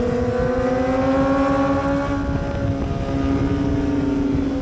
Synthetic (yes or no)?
no